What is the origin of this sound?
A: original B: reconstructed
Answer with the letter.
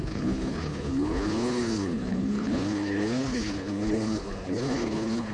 B